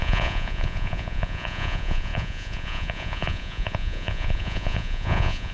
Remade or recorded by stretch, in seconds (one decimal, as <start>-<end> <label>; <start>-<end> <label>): 0.0-5.5 remade